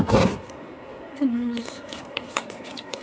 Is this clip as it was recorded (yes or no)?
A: no